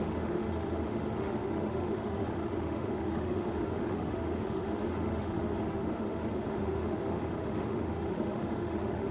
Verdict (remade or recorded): remade